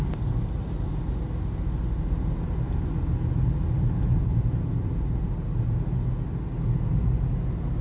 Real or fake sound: real